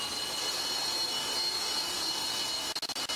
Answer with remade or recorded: recorded